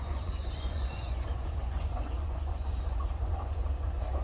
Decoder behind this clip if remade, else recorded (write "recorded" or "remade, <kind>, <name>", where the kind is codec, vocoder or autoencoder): remade, vocoder, Vocos